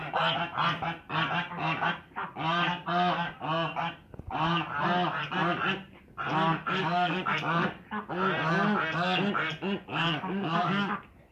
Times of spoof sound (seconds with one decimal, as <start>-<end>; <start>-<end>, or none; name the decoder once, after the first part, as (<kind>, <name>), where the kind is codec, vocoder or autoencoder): 6.8-8.0 (codec, DAC); 9.9-10.9

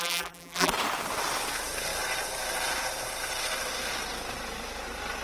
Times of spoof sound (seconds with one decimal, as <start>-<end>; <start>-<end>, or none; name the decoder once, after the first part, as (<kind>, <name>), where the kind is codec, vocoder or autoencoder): 0.0-0.7 (vocoder, BigVGAN v2)

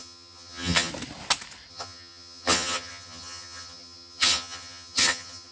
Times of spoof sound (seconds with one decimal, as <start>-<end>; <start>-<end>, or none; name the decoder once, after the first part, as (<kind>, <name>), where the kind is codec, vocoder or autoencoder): 0.0-0.9 (vocoder, HiFi-GAN); 1.7-5.5

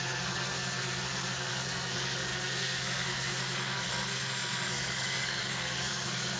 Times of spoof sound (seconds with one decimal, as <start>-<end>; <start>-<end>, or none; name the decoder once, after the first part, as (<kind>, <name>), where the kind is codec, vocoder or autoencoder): 0.0-6.4 (codec, SNAC)

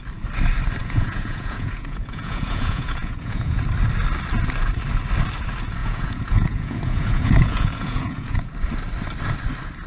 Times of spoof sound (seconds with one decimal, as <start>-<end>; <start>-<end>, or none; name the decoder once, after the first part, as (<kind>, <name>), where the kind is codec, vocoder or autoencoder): 0.8-3.6 (vocoder, Vocos); 5.8-8.5